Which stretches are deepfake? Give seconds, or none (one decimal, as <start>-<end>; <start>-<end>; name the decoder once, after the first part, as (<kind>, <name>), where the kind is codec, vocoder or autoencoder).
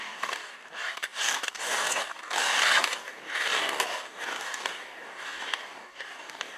0.0-6.6 (codec, DAC)